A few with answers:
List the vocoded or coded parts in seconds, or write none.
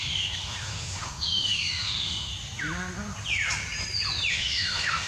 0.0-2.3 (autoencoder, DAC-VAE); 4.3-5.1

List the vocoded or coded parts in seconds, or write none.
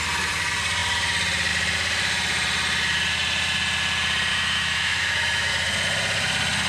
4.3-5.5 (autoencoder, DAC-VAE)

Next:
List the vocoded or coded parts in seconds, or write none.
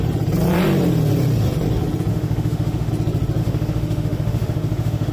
2.1-2.9 (autoencoder, DAC-VAE); 3.4-5.1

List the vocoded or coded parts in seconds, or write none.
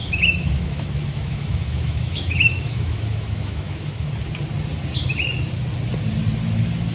0.0-4.1 (autoencoder, DAC-VAE)